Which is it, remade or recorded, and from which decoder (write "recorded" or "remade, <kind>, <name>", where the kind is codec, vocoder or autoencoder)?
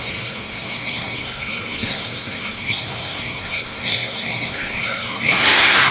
remade, codec, SNAC